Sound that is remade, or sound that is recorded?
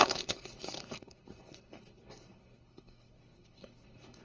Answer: remade